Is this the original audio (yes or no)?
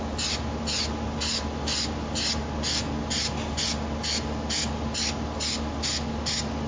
yes